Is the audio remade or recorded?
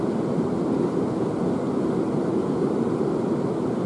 recorded